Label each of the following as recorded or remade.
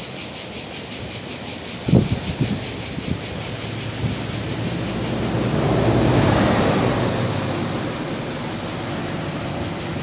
recorded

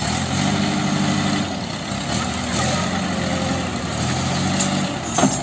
recorded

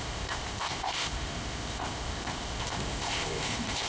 remade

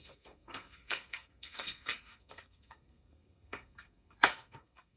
remade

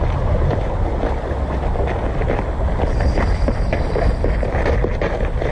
recorded